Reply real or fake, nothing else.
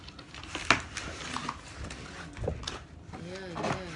real